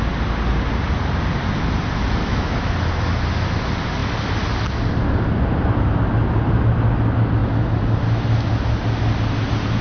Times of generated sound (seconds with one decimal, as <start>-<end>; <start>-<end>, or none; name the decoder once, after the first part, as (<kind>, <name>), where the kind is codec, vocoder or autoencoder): 2.2-2.7 (autoencoder, DAC-VAE)